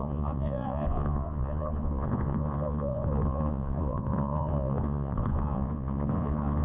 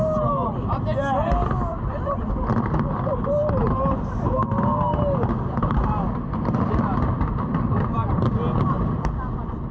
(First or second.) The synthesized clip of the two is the first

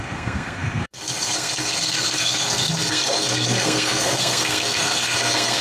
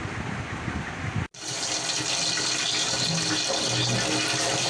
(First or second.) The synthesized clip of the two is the first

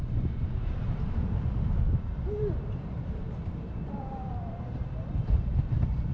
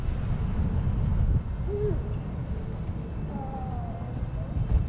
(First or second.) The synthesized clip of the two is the first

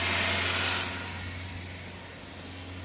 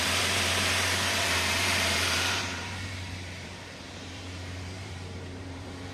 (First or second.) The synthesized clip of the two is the second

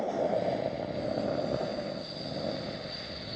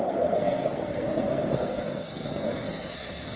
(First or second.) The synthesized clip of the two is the second